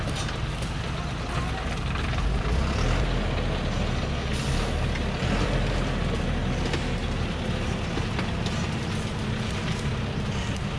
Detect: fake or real real